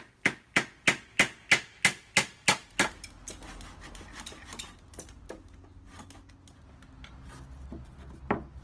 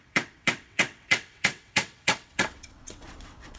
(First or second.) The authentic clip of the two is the first